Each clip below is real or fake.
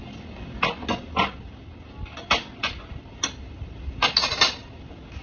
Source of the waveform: real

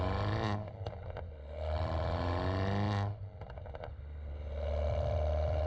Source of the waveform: real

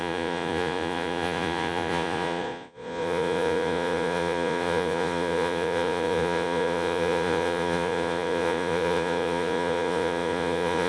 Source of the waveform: fake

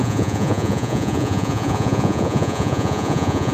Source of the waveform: fake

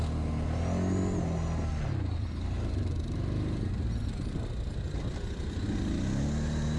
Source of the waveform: real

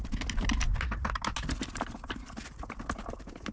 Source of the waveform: real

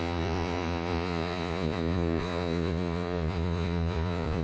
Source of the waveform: fake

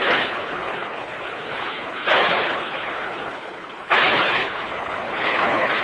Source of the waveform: fake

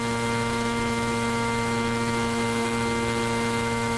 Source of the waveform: fake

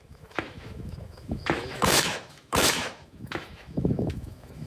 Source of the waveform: fake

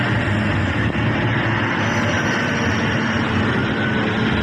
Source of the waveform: real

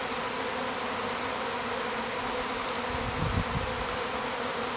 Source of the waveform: real